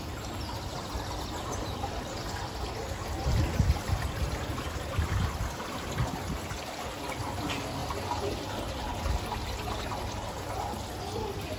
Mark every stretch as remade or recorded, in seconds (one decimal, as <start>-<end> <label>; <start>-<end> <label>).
0.0-0.7 recorded; 0.7-5.8 remade; 5.8-11.6 recorded